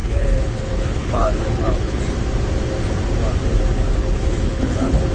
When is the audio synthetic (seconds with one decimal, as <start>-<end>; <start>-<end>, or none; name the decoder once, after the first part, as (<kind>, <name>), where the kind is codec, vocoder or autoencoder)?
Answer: 0.0-2.0 (codec, HILCodec); 4.0-5.1